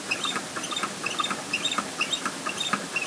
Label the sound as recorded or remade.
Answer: recorded